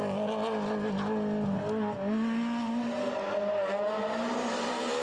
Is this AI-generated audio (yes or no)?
no